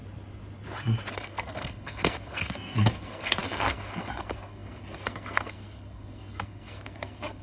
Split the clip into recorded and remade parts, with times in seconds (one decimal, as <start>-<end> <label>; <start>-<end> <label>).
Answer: 0.0-1.1 recorded; 1.1-7.4 remade